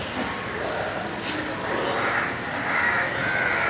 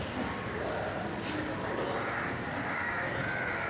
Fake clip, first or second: second